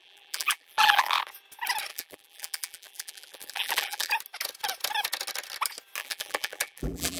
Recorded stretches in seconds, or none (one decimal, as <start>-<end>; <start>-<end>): 1.2-1.9; 4.1-6.0